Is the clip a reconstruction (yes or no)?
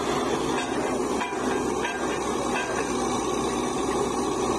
no